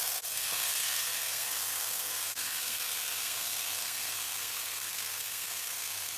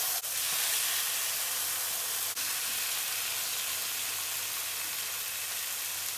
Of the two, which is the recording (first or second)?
second